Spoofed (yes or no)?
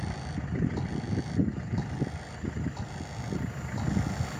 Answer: no